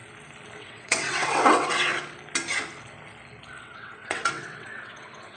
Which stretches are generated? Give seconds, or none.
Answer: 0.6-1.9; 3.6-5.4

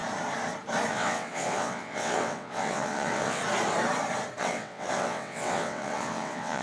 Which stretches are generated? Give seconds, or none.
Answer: 0.9-3.4; 4.4-6.6

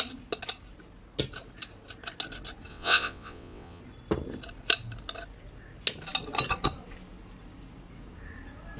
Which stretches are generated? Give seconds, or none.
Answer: 2.7-3.8

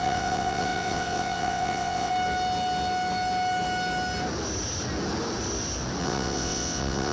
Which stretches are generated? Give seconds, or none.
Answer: 0.0-2.1; 6.0-7.1

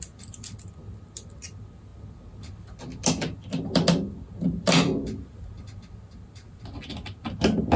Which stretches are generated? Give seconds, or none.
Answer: none

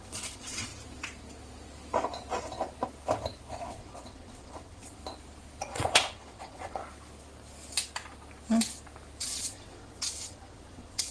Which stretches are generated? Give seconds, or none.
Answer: 0.0-0.7; 3.7-5.0; 5.6-6.8; 9.2-11.1